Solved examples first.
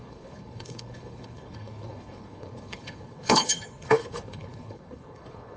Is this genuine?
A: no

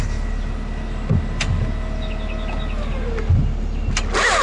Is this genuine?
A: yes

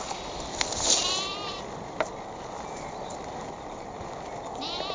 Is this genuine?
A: yes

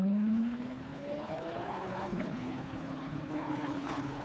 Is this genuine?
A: no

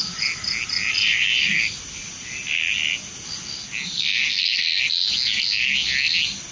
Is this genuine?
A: yes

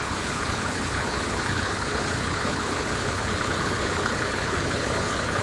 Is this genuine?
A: no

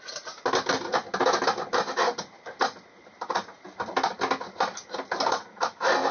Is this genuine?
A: yes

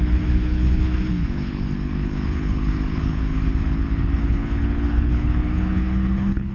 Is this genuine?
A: no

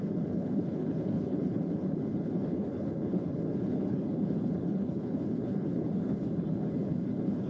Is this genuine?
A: no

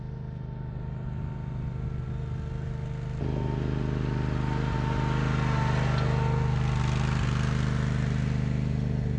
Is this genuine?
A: yes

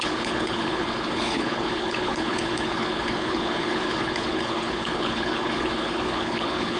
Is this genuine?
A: no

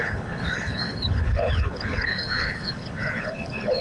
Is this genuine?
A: no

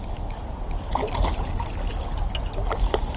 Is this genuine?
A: yes